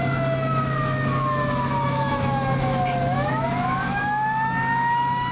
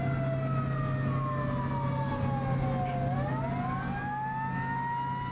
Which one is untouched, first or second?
second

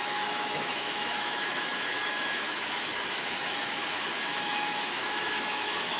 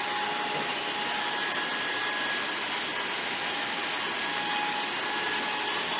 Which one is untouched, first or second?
second